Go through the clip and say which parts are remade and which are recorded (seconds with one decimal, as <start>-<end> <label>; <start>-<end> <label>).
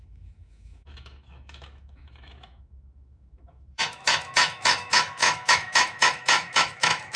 0.0-7.2 remade